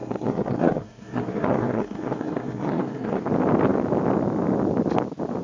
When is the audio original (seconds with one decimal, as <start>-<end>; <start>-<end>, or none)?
3.2-5.4